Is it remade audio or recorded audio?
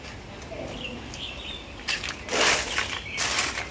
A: recorded